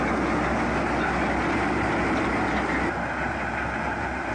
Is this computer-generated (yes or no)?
no